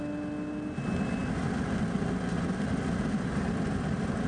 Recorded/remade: recorded